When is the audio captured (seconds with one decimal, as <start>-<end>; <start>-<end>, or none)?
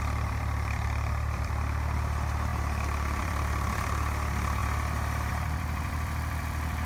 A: none